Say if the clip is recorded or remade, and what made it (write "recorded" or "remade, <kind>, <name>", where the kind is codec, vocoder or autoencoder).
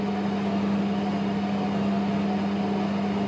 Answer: recorded